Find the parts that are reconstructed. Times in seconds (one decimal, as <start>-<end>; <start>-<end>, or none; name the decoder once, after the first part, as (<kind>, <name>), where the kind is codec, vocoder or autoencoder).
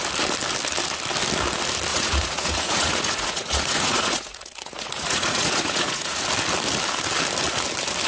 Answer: 1.9-6.2 (vocoder, Vocos)